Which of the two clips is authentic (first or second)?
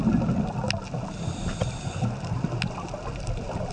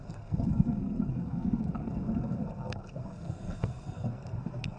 first